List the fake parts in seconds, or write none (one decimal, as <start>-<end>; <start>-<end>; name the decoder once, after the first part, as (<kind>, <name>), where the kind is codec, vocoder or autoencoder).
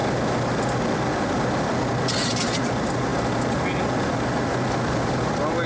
none